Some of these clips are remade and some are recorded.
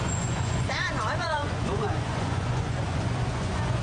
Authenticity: remade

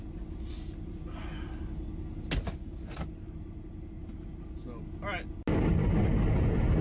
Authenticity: recorded